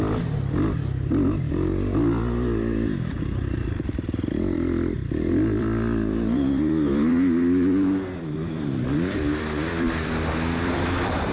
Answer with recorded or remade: remade